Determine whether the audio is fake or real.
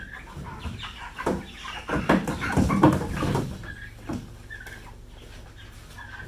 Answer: real